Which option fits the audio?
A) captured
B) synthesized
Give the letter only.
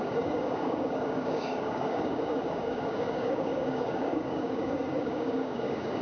B